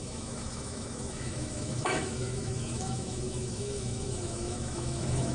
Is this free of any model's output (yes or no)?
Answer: no